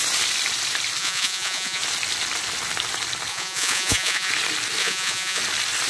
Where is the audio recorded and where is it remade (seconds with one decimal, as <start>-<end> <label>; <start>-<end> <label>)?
0.0-1.0 recorded; 1.0-1.8 remade; 1.8-3.3 recorded; 3.3-4.3 remade; 4.3-4.8 recorded; 4.8-5.4 remade; 5.4-5.9 recorded